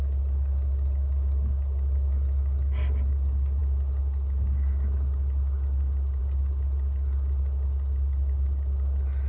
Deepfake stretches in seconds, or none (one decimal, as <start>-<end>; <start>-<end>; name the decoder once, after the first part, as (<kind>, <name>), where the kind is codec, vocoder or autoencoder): none